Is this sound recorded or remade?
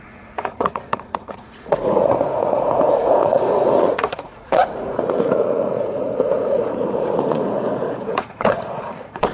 remade